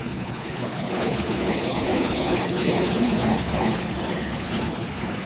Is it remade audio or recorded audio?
remade